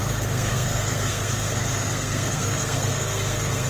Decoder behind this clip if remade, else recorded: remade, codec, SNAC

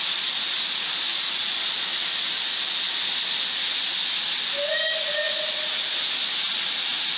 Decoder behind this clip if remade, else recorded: recorded